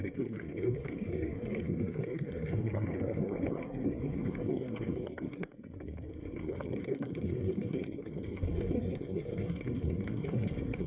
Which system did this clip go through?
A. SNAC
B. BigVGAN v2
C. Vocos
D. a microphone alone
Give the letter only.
A